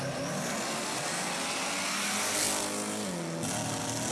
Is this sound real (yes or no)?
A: yes